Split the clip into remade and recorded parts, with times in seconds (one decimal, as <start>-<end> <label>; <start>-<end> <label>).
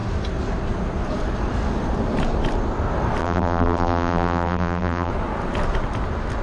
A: 0.0-3.2 recorded; 3.2-5.1 remade; 5.1-6.4 recorded